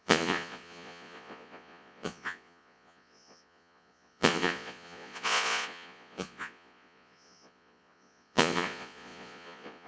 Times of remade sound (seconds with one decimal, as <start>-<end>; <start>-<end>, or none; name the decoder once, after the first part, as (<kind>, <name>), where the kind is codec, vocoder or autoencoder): 0.0-9.9 (vocoder, Vocos)